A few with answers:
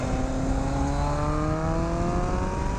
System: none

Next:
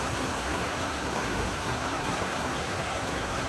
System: codec, SNAC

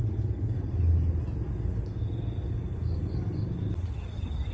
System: none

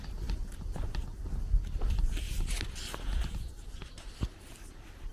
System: none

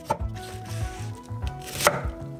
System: none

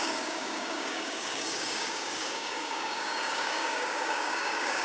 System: codec, DAC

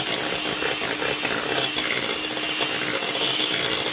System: none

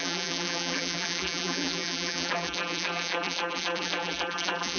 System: vocoder, BigVGAN v2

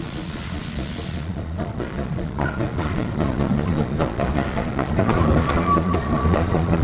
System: vocoder, Vocos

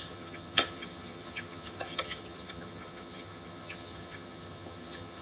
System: vocoder, HiFi-GAN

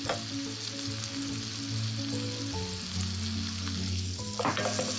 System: none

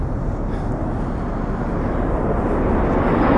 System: none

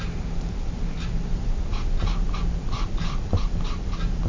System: none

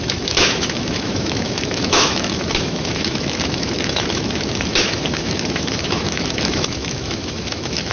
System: autoencoder, DAC-VAE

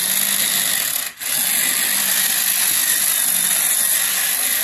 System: none